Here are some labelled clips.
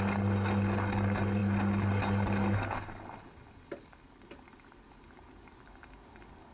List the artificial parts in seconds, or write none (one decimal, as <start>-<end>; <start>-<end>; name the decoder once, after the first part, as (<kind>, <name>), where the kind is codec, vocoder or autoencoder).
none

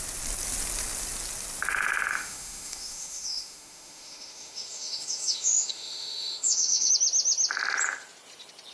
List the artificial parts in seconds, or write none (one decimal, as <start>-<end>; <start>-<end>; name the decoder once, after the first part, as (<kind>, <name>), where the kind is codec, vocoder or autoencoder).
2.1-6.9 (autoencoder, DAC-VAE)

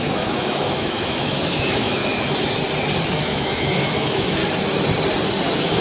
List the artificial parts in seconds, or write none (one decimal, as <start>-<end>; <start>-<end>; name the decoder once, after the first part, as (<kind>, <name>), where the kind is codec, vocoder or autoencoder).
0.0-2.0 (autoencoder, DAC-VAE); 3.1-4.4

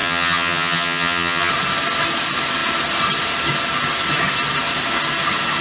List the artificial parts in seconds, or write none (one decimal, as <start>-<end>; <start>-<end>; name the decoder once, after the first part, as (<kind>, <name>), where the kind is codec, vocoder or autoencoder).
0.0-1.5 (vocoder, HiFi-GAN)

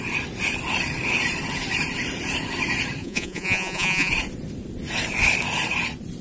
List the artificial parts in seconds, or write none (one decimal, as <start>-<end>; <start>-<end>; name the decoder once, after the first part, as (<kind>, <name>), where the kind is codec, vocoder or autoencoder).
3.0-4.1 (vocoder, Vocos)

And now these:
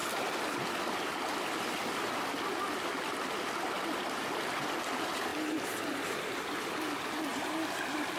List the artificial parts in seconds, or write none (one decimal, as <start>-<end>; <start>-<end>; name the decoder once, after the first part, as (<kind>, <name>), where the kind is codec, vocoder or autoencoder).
5.3-6.0 (vocoder, BigVGAN v2); 7.3-8.2

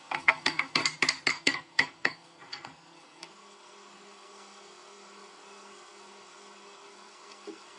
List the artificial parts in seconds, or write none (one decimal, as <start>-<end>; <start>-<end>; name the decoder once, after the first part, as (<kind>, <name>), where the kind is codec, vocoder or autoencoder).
0.0-0.8 (codec, SNAC); 1.3-7.8